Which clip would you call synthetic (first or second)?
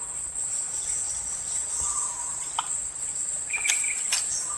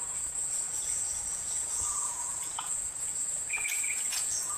second